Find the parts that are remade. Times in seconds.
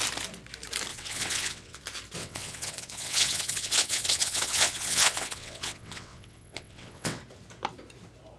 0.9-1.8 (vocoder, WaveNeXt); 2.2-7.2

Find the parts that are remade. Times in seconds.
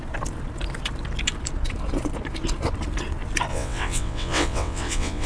3.5-5.3 (vocoder, WaveNeXt)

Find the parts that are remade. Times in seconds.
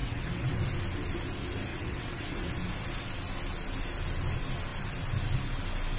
0.0-0.6 (vocoder, WaveNeXt); 1.7-2.5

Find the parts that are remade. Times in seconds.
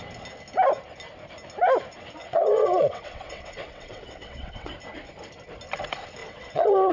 2.2-4.7 (vocoder, WaveNeXt); 6.2-6.9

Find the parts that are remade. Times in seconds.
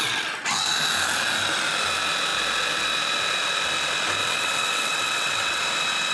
4.2-5.6 (vocoder, WaveNeXt)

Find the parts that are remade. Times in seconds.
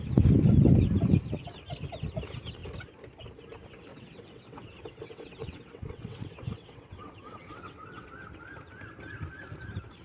3.9-8.1 (vocoder, WaveNeXt)